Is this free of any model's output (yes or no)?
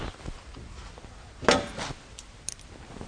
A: yes